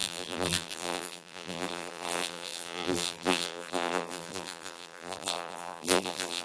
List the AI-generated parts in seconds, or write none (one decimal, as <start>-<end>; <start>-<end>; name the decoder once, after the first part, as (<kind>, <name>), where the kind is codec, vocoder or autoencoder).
0.0-6.4 (vocoder, BigVGAN v2)